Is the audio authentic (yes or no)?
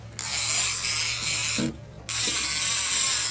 yes